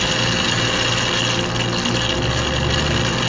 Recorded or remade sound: recorded